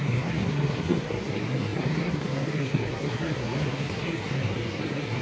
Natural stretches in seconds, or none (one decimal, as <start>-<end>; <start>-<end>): none